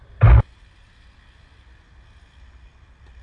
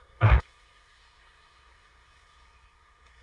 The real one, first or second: first